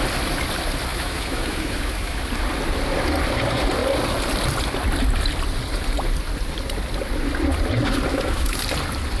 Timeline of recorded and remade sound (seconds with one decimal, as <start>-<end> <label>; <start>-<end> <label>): 0.0-0.9 recorded; 0.9-2.2 remade; 2.2-8.1 recorded; 8.1-8.6 remade; 8.6-9.2 recorded